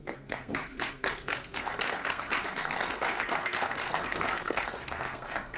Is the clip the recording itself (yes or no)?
no